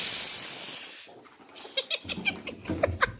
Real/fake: real